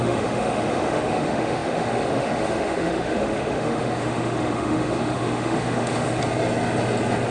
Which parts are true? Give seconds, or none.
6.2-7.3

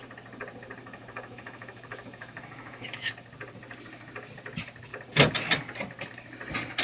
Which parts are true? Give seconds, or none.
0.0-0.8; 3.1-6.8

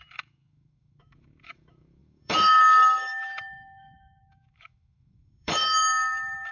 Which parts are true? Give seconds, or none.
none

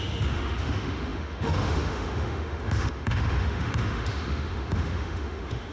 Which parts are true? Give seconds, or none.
none